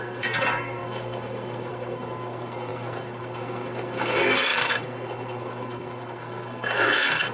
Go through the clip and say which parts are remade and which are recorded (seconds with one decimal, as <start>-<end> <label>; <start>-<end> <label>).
0.0-7.3 remade